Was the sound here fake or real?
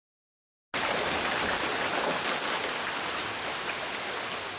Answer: real